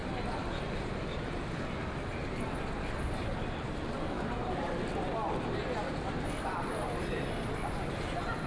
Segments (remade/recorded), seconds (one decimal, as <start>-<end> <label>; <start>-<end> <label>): 0.0-8.5 recorded